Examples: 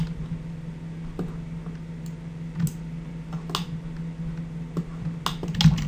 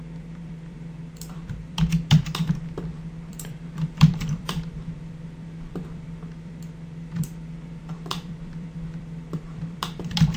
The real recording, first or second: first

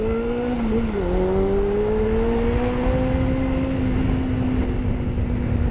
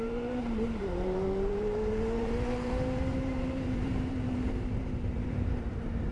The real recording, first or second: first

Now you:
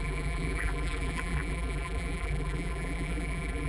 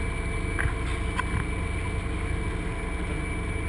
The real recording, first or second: second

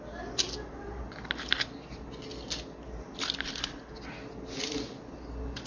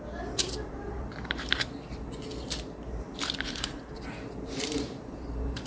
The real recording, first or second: first